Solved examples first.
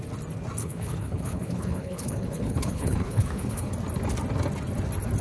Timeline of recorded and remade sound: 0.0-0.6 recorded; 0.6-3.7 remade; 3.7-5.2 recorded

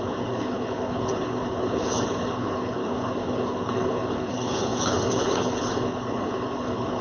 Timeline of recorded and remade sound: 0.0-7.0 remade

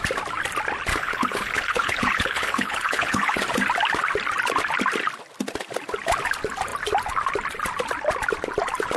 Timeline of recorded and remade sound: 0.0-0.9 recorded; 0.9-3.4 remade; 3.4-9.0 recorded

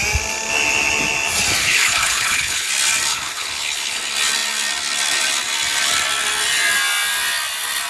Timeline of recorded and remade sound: 0.0-1.6 recorded; 1.6-2.7 remade; 2.7-3.1 recorded; 3.1-4.0 remade; 4.0-7.9 recorded

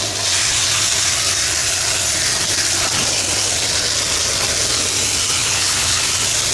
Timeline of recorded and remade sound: 0.0-5.4 recorded; 5.4-6.0 remade; 6.0-6.5 recorded

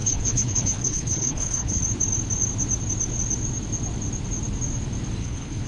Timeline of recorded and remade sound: 0.0-1.8 remade; 1.8-5.2 recorded; 5.2-5.7 remade

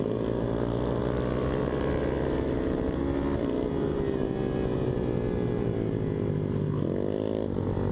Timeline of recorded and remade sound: 0.0-7.9 recorded

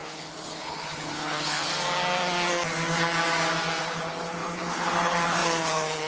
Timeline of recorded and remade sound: 0.0-1.7 remade; 1.7-3.8 recorded; 3.8-6.1 remade